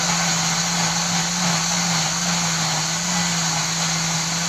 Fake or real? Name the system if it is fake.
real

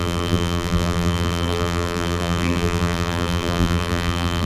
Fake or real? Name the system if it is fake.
fake, vocoder, BigVGAN v2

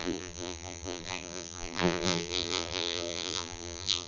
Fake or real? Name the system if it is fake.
fake, vocoder, BigVGAN v2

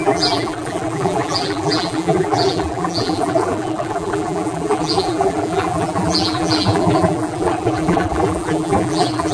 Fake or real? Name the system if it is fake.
fake, vocoder, BigVGAN v2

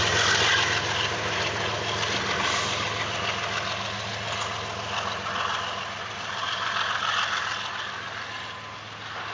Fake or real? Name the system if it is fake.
real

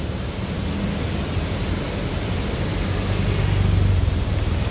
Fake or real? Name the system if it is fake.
real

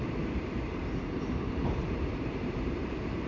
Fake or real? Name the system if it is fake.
fake, vocoder, BigVGAN v2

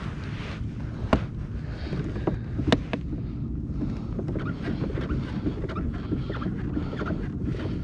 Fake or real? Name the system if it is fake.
real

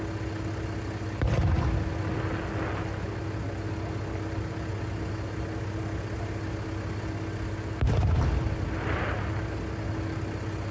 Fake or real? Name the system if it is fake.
real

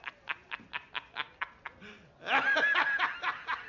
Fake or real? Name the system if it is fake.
real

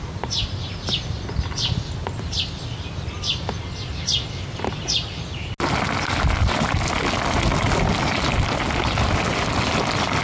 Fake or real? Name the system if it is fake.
real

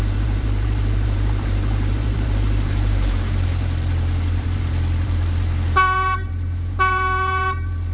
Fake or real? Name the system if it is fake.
fake, vocoder, BigVGAN v2